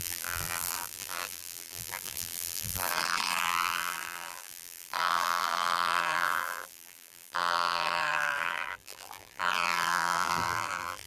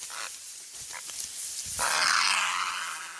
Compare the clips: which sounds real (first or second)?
second